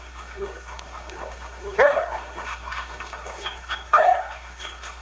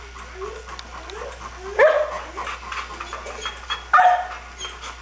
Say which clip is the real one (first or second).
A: second